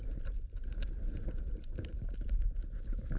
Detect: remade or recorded remade